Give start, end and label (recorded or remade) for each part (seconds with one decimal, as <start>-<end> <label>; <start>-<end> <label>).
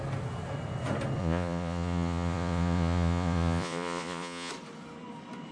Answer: 0.0-1.2 recorded; 1.2-4.5 remade; 4.5-5.5 recorded